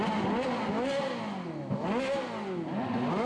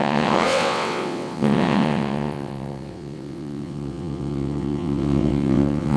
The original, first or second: first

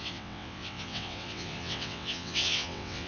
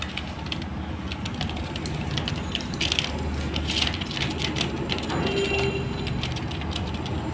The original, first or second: second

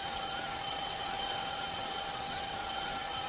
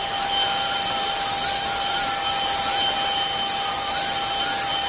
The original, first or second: second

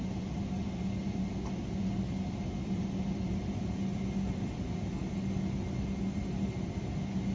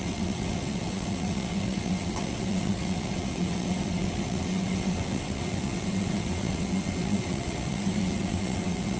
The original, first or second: first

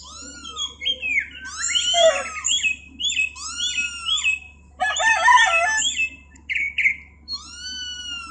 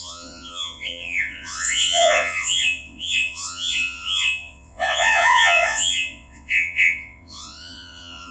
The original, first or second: first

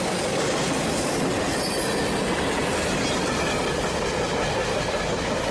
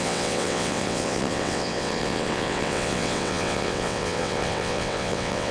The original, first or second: first